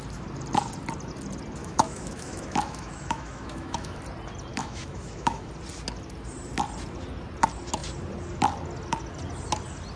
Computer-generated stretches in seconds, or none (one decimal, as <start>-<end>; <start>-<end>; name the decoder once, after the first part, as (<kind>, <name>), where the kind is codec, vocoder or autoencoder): 1.6-4.0 (autoencoder, DAC-VAE); 4.5-5.5